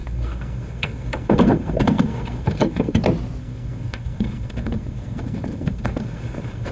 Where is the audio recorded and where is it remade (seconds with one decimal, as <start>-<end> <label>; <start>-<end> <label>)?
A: 0.0-3.0 remade; 3.0-3.4 recorded; 3.4-6.7 remade